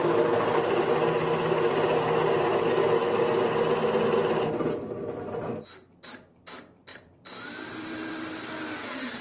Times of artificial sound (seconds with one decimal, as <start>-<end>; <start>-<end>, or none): 6.9-9.2